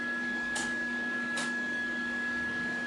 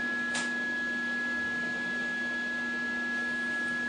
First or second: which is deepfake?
first